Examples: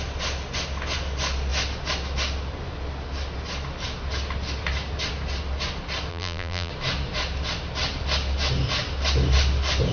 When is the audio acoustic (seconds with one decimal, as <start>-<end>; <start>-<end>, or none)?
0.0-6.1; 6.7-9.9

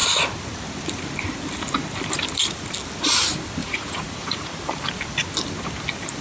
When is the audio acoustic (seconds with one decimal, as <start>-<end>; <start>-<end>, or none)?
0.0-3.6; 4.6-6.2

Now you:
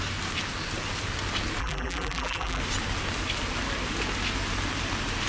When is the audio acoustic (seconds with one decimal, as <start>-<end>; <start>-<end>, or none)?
0.0-1.6; 2.6-5.3

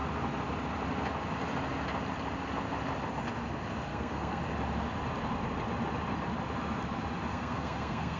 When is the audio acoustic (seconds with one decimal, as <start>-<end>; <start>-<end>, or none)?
0.0-3.9; 4.4-7.3

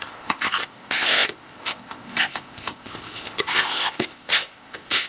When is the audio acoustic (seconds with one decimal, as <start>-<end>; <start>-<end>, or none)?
none

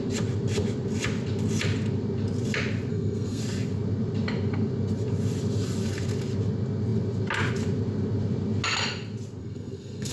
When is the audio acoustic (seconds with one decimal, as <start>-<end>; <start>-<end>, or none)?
0.0-2.9; 3.4-9.4

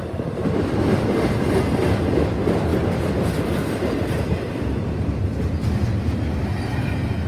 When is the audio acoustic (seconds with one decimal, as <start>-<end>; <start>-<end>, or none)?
0.0-7.3

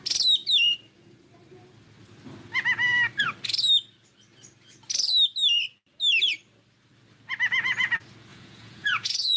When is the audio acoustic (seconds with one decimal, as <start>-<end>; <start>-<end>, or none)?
0.0-8.3